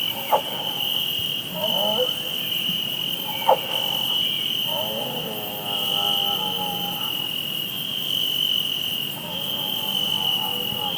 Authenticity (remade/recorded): recorded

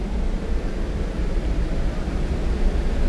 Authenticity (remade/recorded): remade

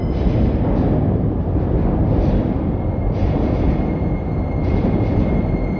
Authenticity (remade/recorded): recorded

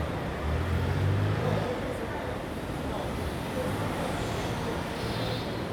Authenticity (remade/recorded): remade